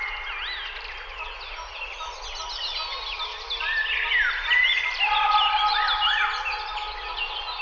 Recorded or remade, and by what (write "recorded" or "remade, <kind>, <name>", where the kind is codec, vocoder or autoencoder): recorded